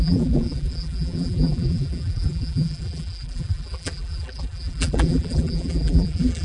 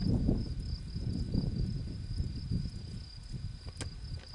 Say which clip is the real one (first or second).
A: second